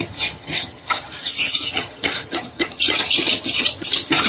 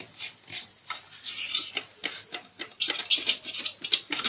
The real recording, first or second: second